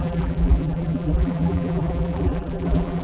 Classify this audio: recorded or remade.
remade